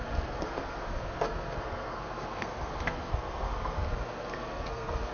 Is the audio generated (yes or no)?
yes